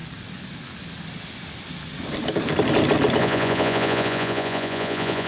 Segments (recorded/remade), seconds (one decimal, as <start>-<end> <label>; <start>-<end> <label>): 0.0-3.2 recorded; 3.2-5.3 remade